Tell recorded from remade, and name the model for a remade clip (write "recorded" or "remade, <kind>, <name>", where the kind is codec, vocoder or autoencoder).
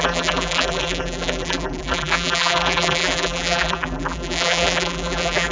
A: remade, vocoder, BigVGAN v2